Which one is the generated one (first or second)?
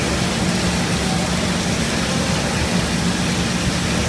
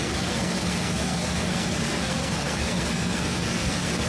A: second